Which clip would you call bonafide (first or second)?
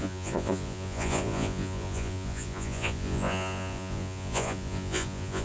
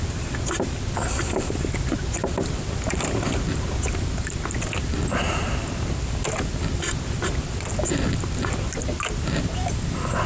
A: second